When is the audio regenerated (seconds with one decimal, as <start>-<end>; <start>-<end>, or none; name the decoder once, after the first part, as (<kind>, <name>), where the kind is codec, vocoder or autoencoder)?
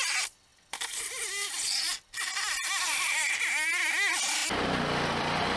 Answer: none